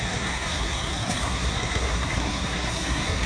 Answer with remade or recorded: remade